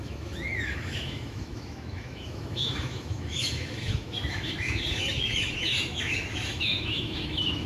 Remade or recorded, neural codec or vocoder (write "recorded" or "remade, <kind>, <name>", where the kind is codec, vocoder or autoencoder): remade, autoencoder, DAC-VAE